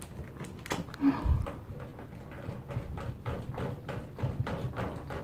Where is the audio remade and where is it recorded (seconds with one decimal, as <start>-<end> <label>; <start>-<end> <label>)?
0.0-5.2 recorded